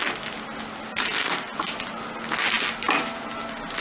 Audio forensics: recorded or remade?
recorded